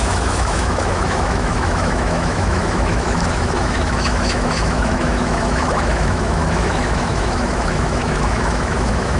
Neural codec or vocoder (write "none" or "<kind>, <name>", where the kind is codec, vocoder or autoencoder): autoencoder, DAC-VAE